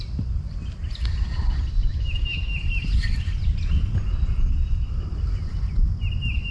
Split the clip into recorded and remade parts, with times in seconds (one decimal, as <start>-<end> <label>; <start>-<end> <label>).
0.0-1.9 recorded; 1.9-2.6 remade; 2.6-6.5 recorded